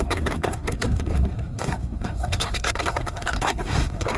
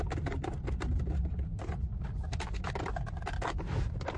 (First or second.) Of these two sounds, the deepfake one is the first